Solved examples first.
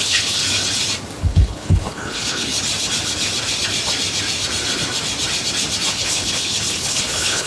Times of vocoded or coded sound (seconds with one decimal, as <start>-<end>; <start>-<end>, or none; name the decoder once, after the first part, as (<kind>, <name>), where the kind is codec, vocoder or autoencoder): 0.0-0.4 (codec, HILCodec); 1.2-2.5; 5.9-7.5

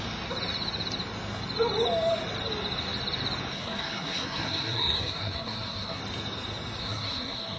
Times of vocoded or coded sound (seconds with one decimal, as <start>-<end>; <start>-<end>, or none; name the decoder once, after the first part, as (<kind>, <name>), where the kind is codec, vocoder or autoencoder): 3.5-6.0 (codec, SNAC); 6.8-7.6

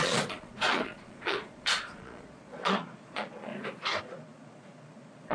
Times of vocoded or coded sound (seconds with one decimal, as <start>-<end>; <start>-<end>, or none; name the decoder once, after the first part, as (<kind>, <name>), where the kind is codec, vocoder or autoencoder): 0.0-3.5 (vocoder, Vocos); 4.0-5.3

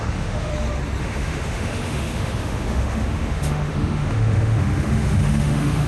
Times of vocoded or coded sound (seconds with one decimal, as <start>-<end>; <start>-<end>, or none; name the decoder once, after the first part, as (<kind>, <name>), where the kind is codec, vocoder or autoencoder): 0.0-0.5 (autoencoder, DAC-VAE); 1.0-5.9

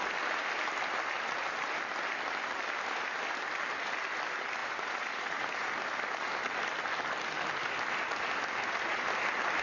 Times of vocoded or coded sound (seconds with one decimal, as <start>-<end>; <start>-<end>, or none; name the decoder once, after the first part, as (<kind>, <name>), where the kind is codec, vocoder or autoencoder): 4.6-5.4 (vocoder, BigVGAN v2)

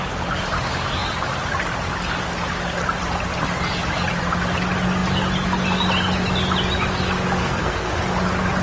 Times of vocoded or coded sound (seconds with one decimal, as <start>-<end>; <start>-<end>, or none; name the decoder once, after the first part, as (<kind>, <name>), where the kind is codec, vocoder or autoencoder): 7.4-8.0 (codec, SNAC)

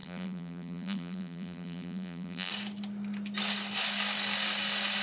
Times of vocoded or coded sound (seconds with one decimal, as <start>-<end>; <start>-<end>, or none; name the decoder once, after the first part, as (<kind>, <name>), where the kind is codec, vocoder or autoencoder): 0.0-2.5 (vocoder, BigVGAN v2)